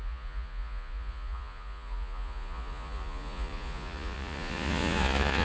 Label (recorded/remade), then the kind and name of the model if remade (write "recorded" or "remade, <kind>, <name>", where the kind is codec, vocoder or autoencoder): remade, vocoder, Vocos